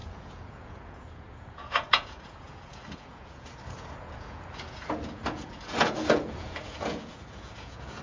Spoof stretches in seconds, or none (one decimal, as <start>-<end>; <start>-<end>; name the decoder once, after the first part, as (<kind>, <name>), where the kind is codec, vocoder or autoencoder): 0.0-8.0 (vocoder, Vocos)